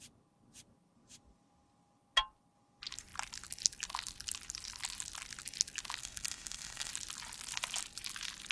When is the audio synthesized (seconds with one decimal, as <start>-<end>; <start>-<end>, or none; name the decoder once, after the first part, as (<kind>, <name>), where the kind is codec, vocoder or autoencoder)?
6.0-6.9 (codec, SNAC)